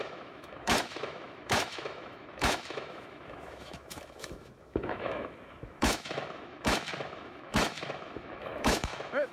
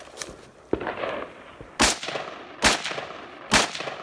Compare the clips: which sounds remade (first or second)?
first